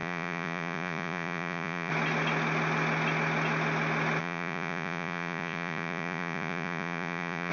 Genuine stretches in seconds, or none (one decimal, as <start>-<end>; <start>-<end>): 1.9-4.2